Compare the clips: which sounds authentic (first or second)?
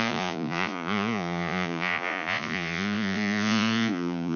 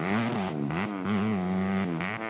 second